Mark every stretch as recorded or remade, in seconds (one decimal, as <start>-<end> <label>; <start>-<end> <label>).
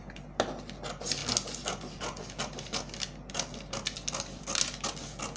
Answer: 0.0-5.4 recorded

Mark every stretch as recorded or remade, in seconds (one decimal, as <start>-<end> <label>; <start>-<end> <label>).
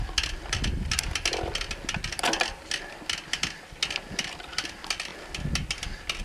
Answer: 0.0-6.2 recorded